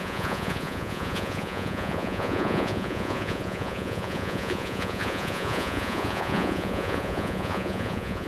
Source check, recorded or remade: remade